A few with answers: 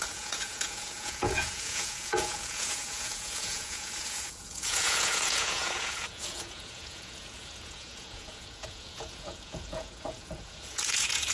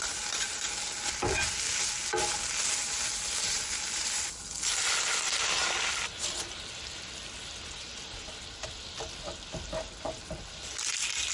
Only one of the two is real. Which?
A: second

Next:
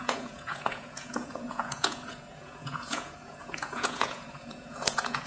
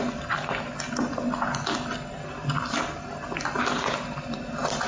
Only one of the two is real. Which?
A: second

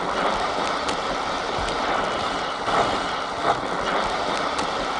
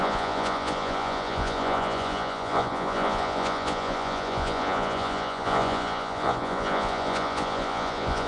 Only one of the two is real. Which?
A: first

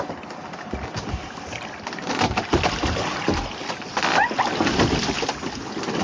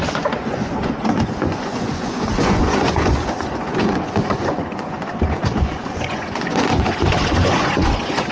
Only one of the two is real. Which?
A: first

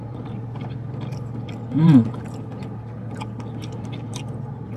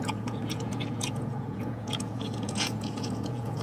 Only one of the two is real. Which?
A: first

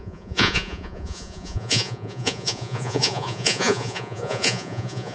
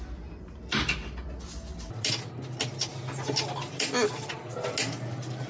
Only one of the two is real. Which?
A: second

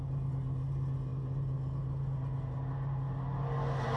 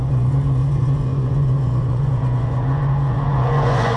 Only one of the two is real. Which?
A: first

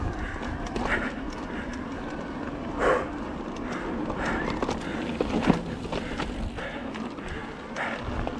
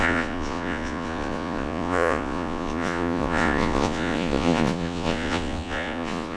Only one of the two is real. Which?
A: first